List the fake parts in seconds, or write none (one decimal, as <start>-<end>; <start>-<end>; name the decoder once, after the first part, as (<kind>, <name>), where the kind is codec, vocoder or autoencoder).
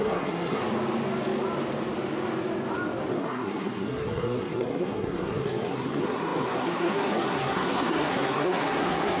0.0-0.6 (codec, SNAC); 3.1-9.2